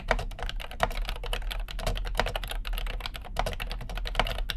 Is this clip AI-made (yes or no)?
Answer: no